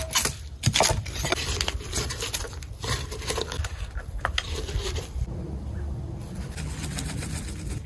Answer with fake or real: real